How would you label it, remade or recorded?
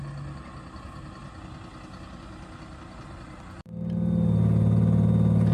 recorded